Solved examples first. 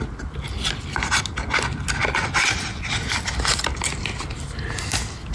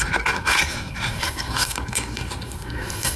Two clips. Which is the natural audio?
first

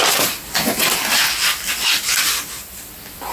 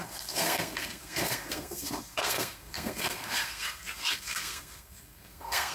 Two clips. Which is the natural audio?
first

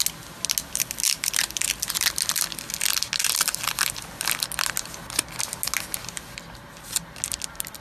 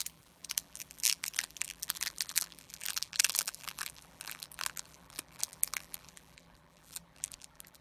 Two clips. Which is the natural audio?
first